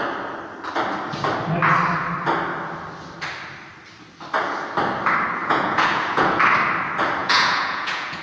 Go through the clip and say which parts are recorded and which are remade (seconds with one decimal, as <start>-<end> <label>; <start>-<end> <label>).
0.0-5.4 recorded; 5.4-6.4 remade; 6.4-7.2 recorded; 7.2-8.2 remade